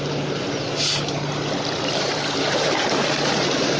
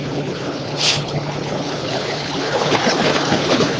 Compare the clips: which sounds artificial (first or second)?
second